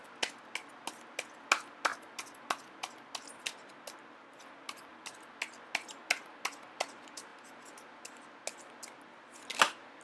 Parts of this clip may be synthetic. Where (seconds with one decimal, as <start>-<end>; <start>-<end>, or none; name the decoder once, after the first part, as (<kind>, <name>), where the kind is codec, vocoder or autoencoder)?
none